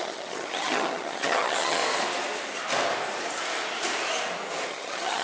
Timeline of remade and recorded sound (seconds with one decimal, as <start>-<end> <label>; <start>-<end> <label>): 0.0-1.8 remade; 1.8-4.7 recorded; 4.7-5.2 remade